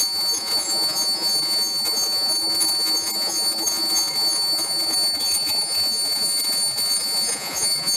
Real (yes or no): no